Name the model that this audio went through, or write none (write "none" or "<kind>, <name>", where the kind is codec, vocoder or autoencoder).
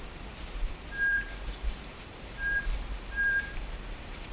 vocoder, BigVGAN v2